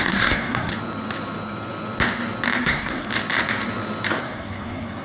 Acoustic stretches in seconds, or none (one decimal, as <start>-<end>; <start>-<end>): 0.7-2.6; 3.1-4.2